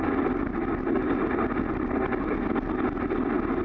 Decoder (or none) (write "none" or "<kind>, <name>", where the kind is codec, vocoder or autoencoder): none